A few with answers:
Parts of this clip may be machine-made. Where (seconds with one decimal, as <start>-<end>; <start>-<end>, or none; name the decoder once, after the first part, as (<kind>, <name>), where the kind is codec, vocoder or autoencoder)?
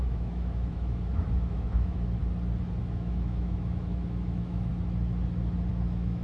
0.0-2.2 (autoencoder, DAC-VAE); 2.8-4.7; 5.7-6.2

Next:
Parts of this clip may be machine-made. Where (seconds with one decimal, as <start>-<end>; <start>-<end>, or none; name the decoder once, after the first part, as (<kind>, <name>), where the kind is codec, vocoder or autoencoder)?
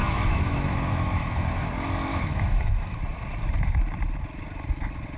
0.0-1.7 (autoencoder, DAC-VAE); 2.1-3.0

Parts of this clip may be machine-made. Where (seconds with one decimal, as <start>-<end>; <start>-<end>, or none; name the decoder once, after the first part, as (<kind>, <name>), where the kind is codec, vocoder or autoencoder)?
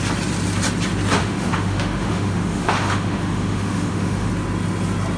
1.2-4.3 (autoencoder, DAC-VAE)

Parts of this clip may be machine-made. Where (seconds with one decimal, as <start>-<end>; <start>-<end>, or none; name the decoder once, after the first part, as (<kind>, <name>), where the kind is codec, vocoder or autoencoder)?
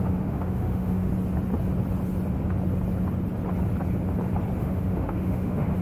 0.0-1.1 (autoencoder, DAC-VAE); 4.6-5.8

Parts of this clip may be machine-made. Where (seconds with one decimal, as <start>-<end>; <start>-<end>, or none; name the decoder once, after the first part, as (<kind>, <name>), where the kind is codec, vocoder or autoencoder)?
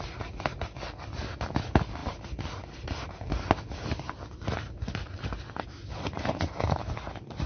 none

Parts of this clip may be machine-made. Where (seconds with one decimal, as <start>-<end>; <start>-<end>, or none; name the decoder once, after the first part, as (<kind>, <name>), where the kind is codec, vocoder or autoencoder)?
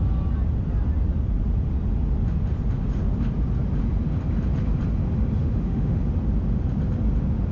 5.4-5.9 (autoencoder, DAC-VAE)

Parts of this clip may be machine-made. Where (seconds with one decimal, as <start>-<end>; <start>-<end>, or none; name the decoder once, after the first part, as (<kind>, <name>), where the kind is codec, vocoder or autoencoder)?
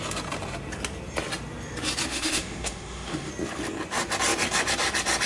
2.1-3.3 (autoencoder, DAC-VAE)